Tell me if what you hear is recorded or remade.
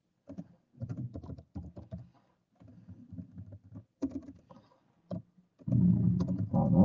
recorded